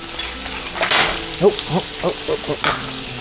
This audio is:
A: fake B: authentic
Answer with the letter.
B